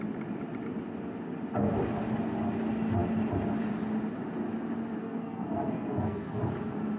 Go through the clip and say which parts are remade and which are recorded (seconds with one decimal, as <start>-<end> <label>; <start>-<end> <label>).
0.0-5.0 recorded; 5.0-6.4 remade; 6.4-7.0 recorded

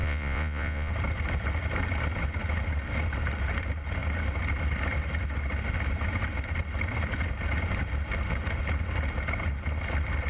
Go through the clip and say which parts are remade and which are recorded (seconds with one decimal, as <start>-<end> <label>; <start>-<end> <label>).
0.0-0.9 remade; 0.9-10.3 recorded

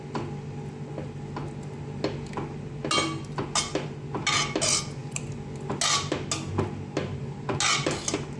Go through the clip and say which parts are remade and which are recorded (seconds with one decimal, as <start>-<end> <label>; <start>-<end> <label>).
0.0-8.4 recorded